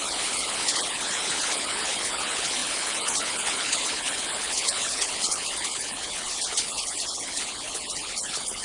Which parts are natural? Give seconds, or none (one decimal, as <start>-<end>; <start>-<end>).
none